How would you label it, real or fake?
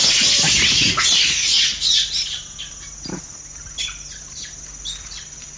real